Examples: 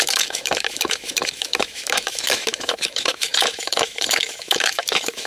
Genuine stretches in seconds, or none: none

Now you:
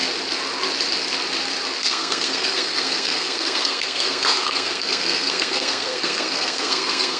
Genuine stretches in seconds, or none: 0.0-1.8